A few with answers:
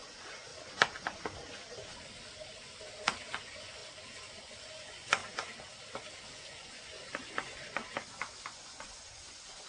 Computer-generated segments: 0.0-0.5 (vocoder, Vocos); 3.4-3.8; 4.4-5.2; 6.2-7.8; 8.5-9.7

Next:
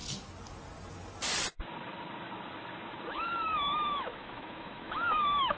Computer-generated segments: 3.1-5.6 (autoencoder, DAC-VAE)